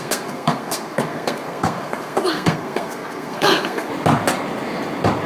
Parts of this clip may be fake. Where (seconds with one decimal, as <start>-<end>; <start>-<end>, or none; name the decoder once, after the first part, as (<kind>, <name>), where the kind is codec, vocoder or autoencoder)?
0.0-3.9 (codec, SNAC)